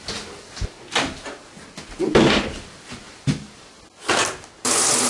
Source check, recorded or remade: recorded